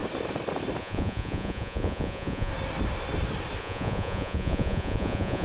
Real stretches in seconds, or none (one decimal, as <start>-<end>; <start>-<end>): 0.0-0.8; 2.5-3.6

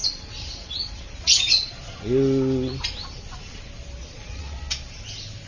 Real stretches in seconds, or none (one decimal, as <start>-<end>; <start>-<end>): 1.7-4.0; 4.6-5.5

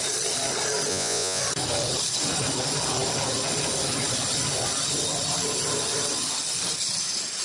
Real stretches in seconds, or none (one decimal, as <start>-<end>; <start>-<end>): 0.0-0.9; 1.4-7.4